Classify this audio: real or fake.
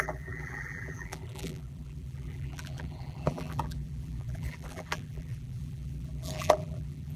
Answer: fake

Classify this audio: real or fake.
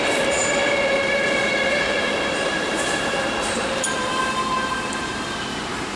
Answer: fake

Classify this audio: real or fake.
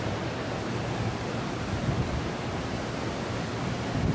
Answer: real